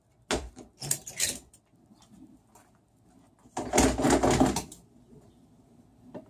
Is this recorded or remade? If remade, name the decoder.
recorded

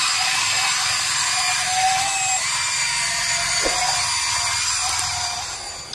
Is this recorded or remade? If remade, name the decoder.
recorded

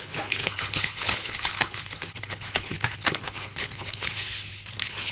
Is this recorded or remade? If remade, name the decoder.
remade, codec, HILCodec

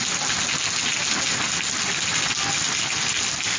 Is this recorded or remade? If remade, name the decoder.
recorded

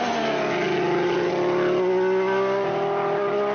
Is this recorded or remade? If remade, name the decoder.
recorded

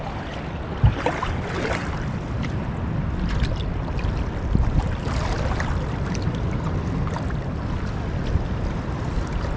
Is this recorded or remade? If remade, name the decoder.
recorded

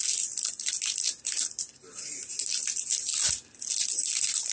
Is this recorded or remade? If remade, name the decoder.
recorded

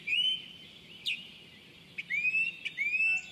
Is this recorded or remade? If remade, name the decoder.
recorded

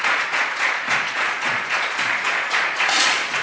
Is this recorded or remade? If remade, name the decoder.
remade, vocoder, Vocos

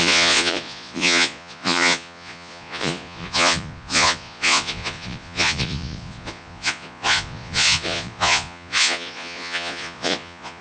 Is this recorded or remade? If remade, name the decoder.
remade, vocoder, Vocos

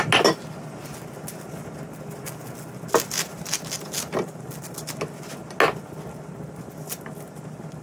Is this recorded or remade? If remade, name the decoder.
recorded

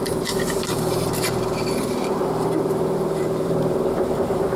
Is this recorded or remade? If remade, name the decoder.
remade, vocoder, BigVGAN v2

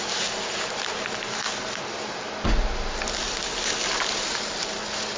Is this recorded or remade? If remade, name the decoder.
recorded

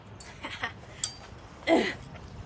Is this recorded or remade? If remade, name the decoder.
recorded